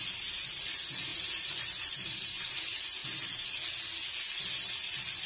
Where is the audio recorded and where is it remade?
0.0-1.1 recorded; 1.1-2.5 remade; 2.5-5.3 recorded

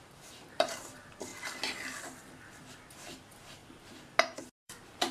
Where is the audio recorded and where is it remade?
0.0-1.3 remade; 1.3-2.7 recorded; 2.7-3.6 remade; 3.6-4.4 recorded; 4.4-5.1 remade